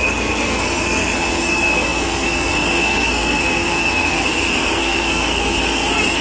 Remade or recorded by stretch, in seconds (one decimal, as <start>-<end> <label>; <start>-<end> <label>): 0.0-6.2 remade